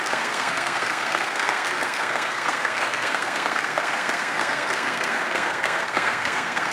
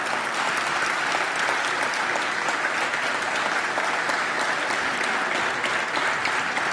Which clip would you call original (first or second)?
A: second